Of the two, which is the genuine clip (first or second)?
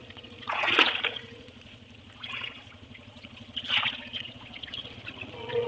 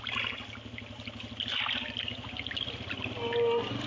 second